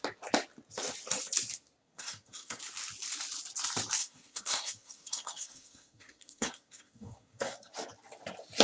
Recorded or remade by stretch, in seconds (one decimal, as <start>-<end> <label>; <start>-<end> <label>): 0.0-1.8 recorded; 1.8-2.6 remade; 2.6-4.0 recorded; 4.0-7.7 remade; 7.7-8.6 recorded